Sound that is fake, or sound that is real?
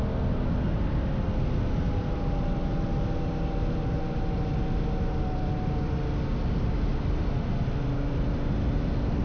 real